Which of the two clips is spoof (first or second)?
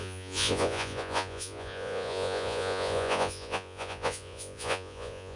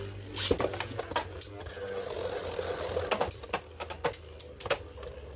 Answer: first